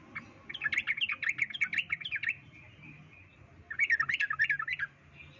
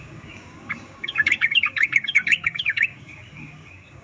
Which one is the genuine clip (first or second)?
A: first